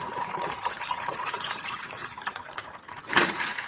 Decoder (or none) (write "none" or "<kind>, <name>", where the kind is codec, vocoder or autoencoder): vocoder, Vocos